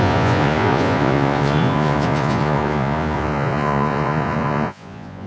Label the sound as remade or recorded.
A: remade